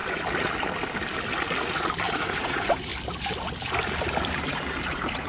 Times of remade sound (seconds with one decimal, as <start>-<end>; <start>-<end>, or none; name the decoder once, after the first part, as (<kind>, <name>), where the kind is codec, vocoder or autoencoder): 2.1-2.9 (vocoder, Vocos); 4.8-5.3